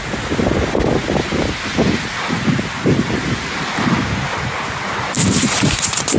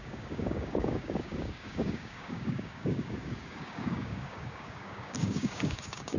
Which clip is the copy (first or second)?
second